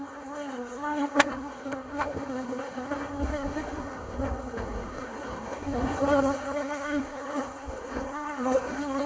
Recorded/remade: remade